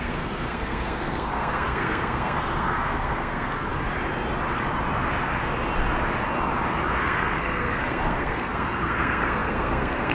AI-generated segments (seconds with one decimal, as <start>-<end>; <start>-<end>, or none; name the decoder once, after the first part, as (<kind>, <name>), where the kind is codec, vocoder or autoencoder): 0.0-3.7 (codec, SNAC); 7.0-10.1